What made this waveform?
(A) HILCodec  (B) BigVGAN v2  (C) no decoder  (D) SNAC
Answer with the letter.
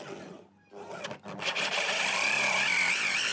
C